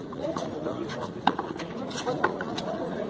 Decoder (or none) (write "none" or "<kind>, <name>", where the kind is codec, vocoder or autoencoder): vocoder, Vocos